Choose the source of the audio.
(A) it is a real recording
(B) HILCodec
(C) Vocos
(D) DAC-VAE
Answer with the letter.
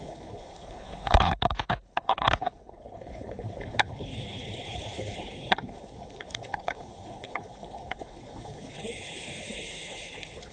B